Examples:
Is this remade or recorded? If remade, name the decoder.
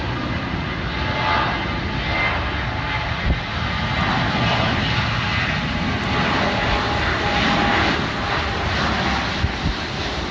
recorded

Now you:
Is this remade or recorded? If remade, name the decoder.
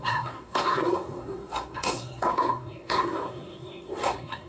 remade, codec, SNAC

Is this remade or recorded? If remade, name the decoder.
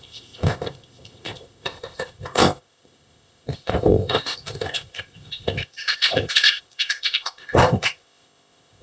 remade, codec, ZipCodec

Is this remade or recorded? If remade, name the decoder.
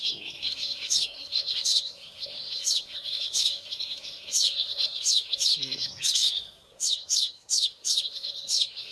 remade, codec, SNAC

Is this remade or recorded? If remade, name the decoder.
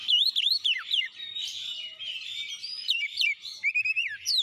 remade, vocoder, BigVGAN v2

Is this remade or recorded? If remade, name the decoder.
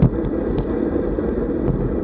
recorded